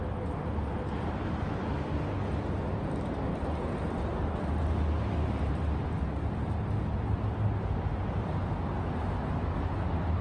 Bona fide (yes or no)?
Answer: yes